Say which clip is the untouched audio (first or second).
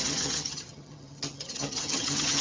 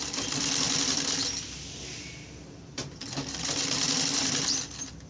second